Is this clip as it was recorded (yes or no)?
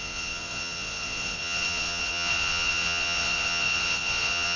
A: no